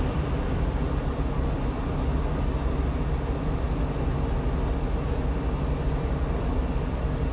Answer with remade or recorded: recorded